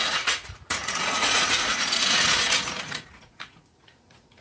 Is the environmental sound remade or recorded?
remade